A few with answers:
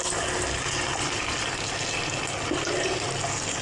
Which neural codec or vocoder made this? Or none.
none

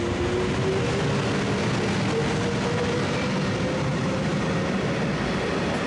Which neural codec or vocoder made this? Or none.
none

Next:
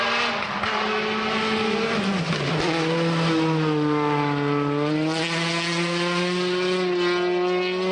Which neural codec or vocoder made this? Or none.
none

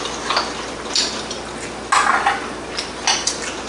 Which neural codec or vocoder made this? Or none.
none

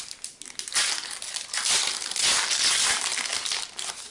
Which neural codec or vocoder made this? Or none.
none